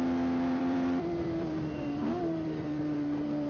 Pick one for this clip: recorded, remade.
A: remade